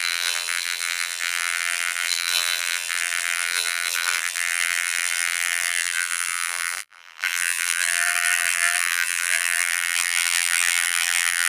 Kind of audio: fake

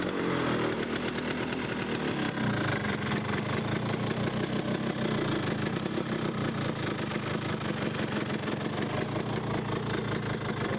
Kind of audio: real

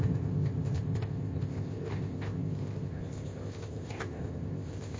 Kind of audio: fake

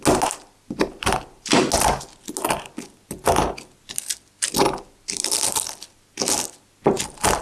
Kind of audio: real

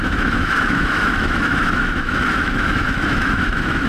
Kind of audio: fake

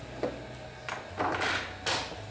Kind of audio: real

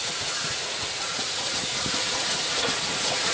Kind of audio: fake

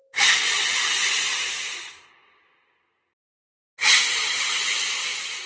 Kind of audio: real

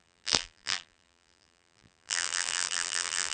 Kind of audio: fake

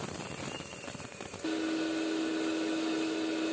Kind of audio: real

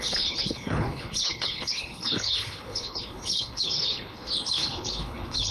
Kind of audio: fake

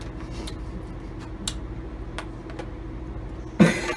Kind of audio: real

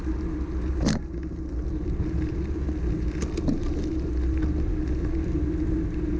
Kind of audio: real